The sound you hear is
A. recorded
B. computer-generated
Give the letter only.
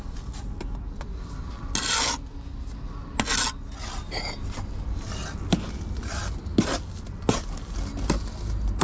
A